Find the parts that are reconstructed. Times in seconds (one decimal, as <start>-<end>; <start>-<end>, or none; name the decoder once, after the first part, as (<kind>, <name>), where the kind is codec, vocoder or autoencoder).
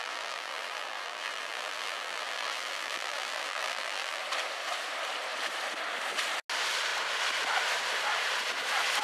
0.0-4.2 (vocoder, BigVGAN v2)